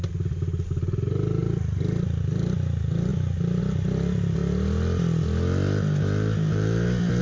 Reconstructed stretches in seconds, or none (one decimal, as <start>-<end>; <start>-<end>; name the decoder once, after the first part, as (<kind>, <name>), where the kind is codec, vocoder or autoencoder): none